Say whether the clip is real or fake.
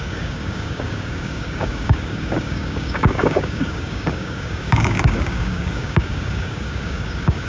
fake